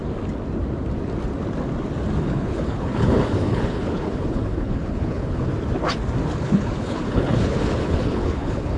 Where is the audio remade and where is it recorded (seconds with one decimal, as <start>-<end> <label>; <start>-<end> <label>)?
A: 0.0-2.2 recorded; 2.2-5.5 remade; 5.5-6.4 recorded; 6.4-8.8 remade